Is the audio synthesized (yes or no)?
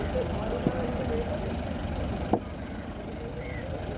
yes